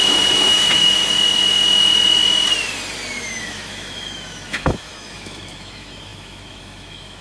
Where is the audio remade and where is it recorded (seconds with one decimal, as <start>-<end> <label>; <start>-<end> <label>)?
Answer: 0.0-2.2 remade; 2.2-3.4 recorded; 3.4-7.2 remade